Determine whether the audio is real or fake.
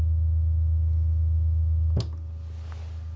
real